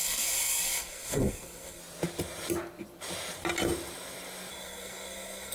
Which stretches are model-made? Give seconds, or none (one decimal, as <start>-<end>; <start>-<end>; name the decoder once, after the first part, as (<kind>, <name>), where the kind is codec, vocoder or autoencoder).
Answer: 0.0-1.8 (codec, SNAC); 4.5-5.5